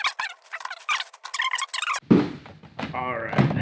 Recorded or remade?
recorded